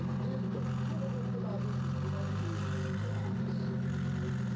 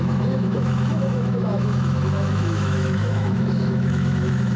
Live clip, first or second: first